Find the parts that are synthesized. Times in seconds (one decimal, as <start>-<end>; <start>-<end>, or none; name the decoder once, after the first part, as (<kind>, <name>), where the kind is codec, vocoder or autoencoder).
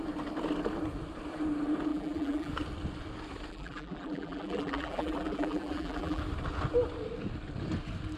1.9-2.5 (vocoder, BigVGAN v2); 3.5-6.2